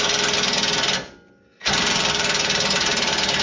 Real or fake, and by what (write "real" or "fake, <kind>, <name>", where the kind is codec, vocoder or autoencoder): real